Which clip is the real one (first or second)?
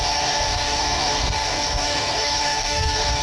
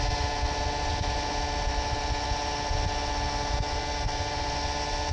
second